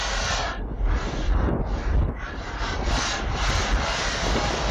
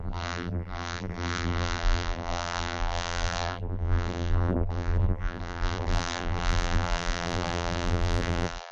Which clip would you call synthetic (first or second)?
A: second